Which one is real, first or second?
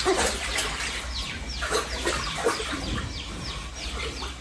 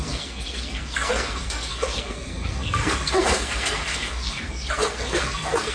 first